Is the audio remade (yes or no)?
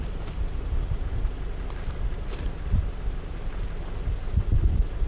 no